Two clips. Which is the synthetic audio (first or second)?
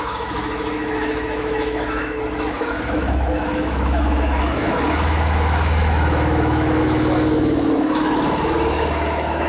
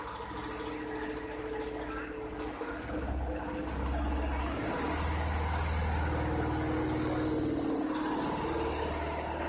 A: first